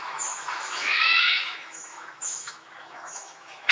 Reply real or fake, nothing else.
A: fake